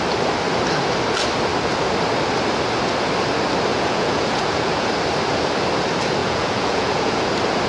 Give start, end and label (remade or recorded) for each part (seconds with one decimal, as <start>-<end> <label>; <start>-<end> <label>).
0.0-3.7 recorded; 3.7-4.9 remade; 4.9-6.2 recorded; 6.2-7.2 remade; 7.2-7.7 recorded